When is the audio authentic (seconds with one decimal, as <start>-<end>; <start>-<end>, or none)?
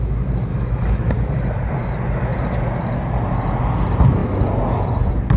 0.0-0.5; 1.1-5.4